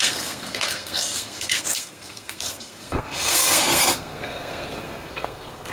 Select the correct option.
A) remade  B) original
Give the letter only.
A